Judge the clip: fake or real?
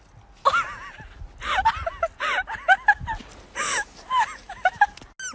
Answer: real